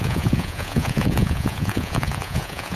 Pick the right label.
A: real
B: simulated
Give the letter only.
B